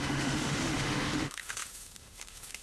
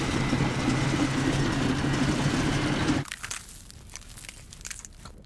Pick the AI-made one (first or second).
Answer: first